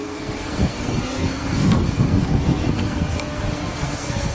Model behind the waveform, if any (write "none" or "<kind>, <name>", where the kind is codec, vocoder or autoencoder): codec, SNAC